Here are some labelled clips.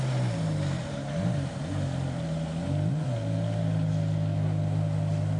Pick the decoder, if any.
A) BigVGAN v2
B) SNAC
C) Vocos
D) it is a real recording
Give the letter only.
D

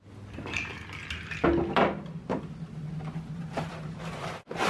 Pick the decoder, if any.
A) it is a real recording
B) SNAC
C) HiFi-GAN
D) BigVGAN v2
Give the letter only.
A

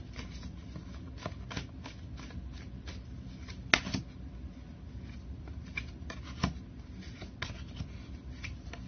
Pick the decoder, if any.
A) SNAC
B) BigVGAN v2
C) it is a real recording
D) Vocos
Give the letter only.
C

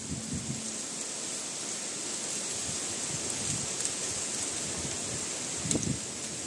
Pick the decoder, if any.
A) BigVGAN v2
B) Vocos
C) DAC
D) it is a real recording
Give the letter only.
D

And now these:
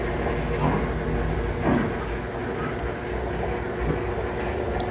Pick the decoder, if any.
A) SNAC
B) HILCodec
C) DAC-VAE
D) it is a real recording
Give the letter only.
D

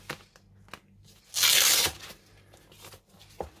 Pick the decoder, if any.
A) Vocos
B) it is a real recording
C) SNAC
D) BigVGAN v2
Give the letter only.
B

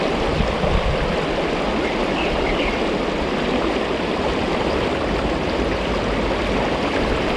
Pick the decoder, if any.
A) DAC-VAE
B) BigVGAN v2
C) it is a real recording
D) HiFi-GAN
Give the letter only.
C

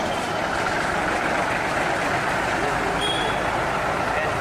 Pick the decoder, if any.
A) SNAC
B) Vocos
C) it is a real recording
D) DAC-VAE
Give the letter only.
C